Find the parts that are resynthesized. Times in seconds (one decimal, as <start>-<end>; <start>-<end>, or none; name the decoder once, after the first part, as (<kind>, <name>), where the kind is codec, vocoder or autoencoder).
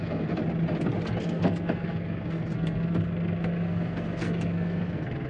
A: 0.0-0.4 (codec, SNAC); 1.2-5.3